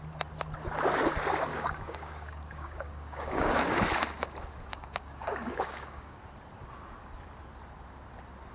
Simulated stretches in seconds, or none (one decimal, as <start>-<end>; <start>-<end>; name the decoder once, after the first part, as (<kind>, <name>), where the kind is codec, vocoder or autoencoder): 1.5-3.6 (codec, DAC); 4.7-6.2